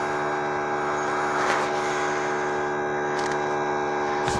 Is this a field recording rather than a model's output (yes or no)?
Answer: yes